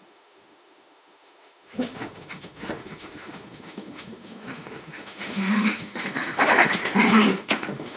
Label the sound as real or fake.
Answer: fake